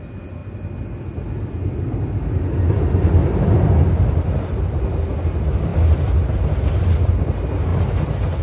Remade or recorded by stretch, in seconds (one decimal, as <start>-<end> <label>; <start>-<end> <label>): 0.0-3.2 recorded; 3.2-4.8 remade; 4.8-8.4 recorded